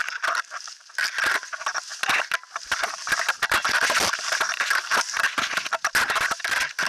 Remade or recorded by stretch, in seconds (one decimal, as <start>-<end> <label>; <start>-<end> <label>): 0.0-1.9 remade; 1.9-6.0 recorded; 6.0-6.9 remade

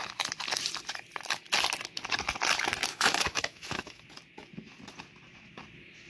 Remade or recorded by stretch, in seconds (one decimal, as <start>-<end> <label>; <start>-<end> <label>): 0.0-2.9 recorded; 2.9-4.0 remade; 4.0-6.1 recorded